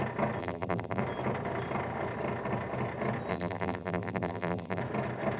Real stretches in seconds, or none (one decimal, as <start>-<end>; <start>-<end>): 0.0-0.4; 1.0-3.3; 4.8-5.4